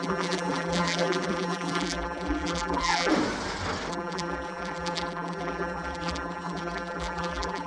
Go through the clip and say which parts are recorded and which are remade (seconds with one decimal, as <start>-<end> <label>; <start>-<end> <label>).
0.0-3.1 remade; 3.1-3.9 recorded; 3.9-7.7 remade